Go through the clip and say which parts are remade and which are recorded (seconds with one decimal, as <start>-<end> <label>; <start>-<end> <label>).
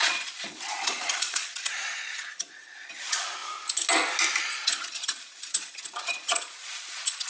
0.0-3.4 remade; 3.4-4.4 recorded; 4.4-7.3 remade